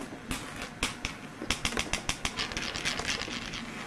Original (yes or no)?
yes